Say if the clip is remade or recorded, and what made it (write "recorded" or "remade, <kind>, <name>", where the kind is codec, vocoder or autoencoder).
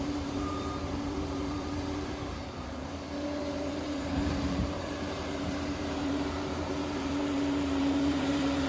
remade, vocoder, BigVGAN v2